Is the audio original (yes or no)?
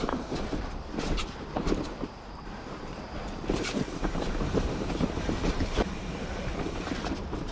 no